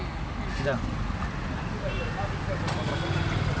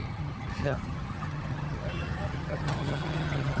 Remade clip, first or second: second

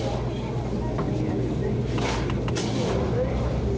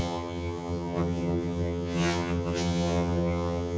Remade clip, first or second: second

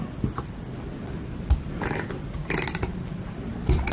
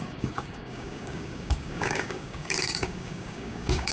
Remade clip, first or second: second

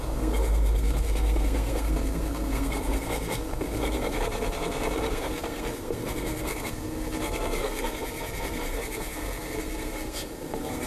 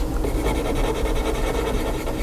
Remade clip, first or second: first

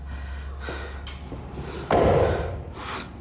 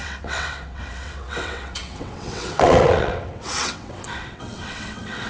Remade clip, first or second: second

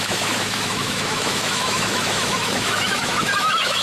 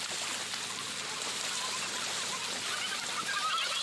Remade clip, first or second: first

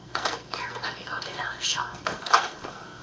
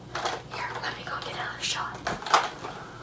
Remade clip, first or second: first